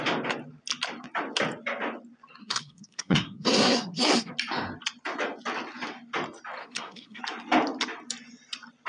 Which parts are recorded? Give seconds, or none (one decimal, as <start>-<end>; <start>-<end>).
0.0-2.4; 4.3-6.6; 7.2-8.9